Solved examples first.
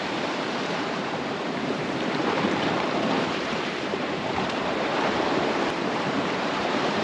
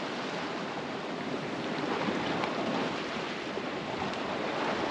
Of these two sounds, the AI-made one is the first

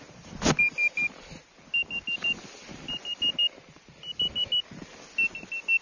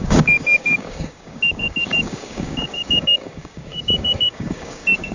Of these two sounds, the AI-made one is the second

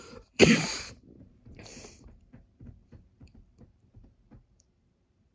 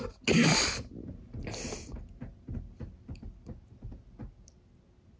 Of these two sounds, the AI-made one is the first